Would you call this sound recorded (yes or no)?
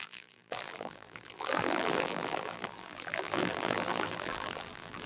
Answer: no